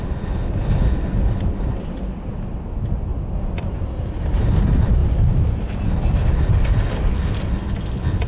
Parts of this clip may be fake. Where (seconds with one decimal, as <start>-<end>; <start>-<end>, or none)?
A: none